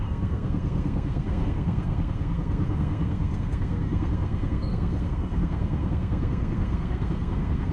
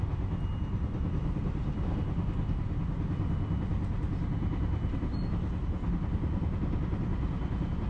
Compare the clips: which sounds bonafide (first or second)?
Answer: second